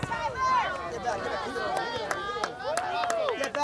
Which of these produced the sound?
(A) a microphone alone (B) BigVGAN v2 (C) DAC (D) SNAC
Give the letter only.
A